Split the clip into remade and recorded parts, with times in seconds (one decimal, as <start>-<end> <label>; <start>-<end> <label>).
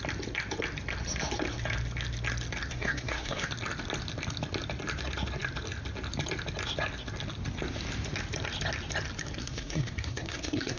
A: 0.0-2.7 recorded; 2.7-3.5 remade; 3.5-9.4 recorded; 9.4-10.8 remade